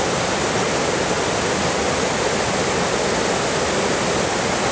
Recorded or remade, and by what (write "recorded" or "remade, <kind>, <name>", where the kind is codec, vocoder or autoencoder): recorded